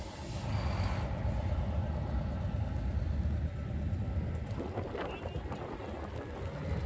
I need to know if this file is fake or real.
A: real